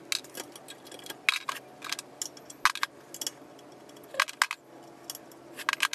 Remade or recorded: recorded